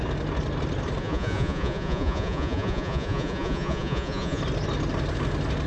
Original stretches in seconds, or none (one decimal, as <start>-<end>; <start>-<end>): 0.0-1.0; 4.4-5.7

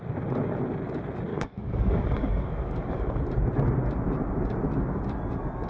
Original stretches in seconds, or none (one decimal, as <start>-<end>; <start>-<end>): 0.0-1.3; 3.2-5.7

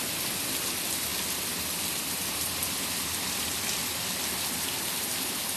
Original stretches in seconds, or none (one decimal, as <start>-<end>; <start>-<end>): 0.0-5.6

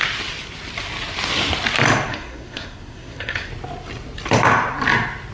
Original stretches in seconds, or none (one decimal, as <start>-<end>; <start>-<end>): 0.0-2.1; 3.5-5.3

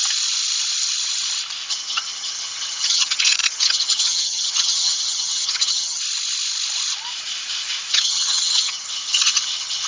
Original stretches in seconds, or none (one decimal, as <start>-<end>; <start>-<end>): 0.0-1.7; 6.0-7.9

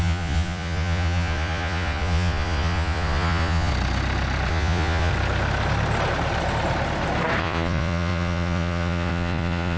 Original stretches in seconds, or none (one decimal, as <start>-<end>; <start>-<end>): 3.7-4.5; 5.1-7.4

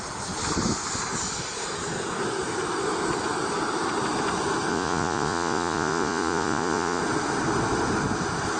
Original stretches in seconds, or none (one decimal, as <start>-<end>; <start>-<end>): 0.0-4.7; 7.0-8.6

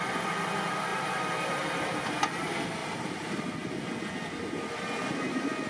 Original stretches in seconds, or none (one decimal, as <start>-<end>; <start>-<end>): 0.0-0.9; 2.1-2.8; 3.5-5.7